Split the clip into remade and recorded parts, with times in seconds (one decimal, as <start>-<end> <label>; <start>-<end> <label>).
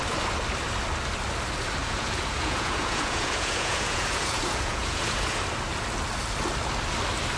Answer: 0.0-1.8 recorded; 1.8-5.4 remade; 5.4-7.4 recorded